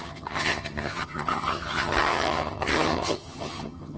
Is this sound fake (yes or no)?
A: yes